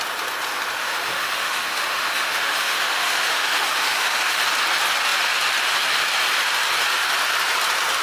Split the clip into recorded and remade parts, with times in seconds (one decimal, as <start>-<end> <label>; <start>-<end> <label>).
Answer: 0.0-0.8 recorded; 0.8-4.4 remade; 4.4-8.0 recorded